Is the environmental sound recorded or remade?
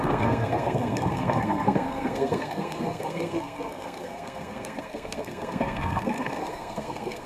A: remade